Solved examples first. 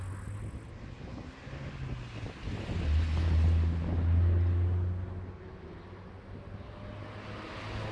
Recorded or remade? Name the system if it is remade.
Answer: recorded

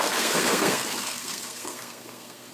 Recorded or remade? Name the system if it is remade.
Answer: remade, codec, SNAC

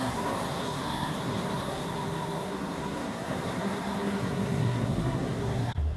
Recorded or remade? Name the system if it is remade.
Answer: remade, codec, SNAC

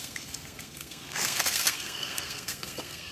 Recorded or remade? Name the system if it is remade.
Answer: remade, codec, SNAC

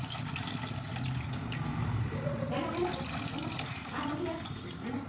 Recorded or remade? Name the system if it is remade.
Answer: recorded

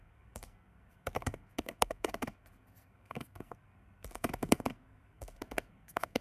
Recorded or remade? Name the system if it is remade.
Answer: remade, codec, SNAC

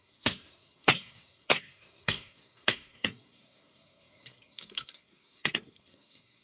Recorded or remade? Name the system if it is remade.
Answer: remade, codec, SNAC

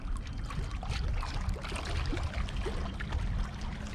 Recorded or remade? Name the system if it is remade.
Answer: recorded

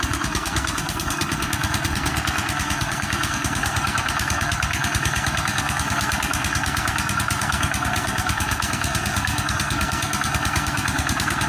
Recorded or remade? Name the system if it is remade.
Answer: remade, codec, SNAC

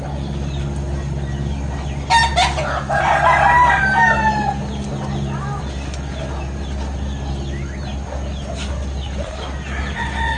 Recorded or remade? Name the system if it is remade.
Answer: recorded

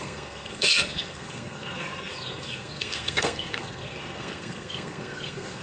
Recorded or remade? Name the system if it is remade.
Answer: remade, codec, SNAC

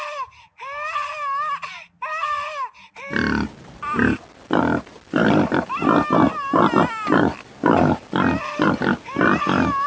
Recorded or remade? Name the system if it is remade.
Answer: recorded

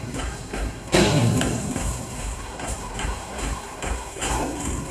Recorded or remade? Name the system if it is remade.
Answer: remade, codec, SNAC